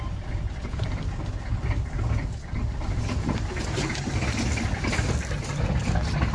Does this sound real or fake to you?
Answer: real